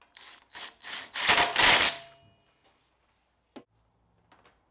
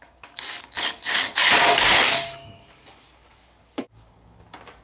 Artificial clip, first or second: second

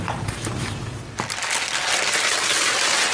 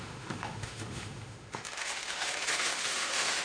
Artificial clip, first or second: second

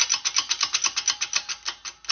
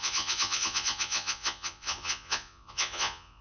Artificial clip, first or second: second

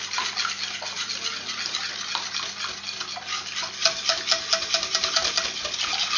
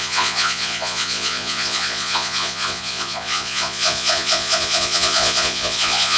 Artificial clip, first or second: second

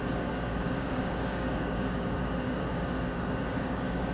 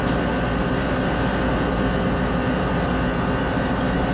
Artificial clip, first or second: first